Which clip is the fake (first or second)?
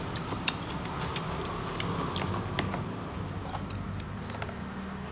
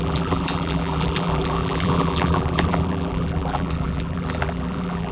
second